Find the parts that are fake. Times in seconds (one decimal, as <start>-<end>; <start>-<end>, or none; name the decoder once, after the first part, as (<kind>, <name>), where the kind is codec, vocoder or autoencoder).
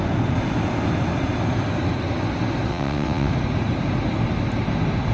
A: 2.7-3.3 (vocoder, WaveNeXt)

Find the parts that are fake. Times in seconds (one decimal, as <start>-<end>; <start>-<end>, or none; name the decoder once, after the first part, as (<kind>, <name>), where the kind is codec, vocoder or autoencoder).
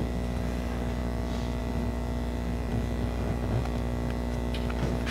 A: none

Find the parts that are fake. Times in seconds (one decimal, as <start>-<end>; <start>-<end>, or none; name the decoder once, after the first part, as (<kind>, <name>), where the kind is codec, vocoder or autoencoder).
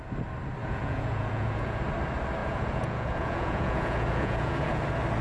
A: 0.6-1.8 (vocoder, Vocos); 2.4-4.8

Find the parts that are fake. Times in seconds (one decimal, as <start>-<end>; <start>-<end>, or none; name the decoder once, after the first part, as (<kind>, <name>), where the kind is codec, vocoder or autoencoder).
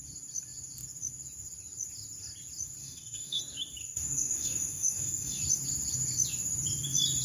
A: 2.8-3.4 (codec, DAC); 3.8-5.4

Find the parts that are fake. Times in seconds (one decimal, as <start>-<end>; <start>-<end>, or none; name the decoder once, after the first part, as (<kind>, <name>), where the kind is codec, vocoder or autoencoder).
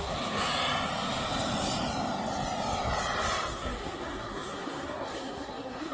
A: 0.0-0.5 (codec, SNAC); 3.5-5.9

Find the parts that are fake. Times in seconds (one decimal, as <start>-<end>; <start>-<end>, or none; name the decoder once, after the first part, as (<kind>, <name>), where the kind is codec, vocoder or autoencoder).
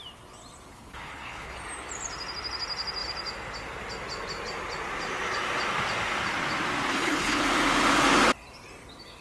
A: 0.7-1.6 (codec, HILCodec); 6.9-7.4